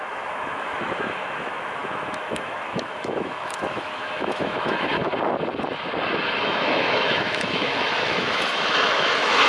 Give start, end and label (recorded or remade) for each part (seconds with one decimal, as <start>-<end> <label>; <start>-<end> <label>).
0.0-5.1 remade; 5.1-6.4 recorded; 6.4-9.5 remade